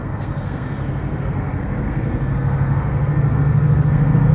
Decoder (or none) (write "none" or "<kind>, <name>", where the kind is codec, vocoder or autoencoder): codec, SNAC